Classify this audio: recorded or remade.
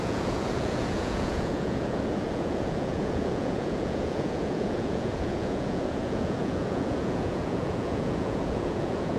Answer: remade